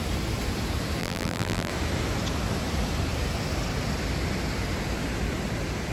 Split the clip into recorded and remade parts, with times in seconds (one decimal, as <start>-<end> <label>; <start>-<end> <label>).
0.0-1.0 recorded; 1.0-1.7 remade; 1.7-5.9 recorded